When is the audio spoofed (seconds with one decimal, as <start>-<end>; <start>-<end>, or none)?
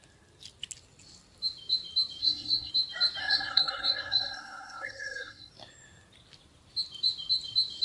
2.2-2.7; 3.2-5.5